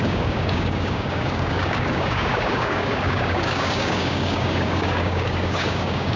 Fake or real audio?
fake